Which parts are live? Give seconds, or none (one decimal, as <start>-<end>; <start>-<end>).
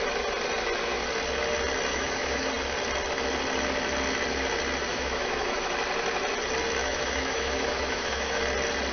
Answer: 0.0-1.9; 2.5-4.9; 5.7-6.8; 8.4-8.9